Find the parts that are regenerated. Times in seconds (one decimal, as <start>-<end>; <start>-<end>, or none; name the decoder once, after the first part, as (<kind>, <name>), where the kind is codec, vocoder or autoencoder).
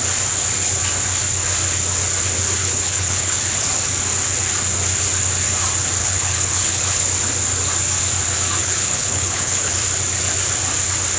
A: 2.6-3.4 (codec, HILCodec); 6.0-7.1; 8.6-9.7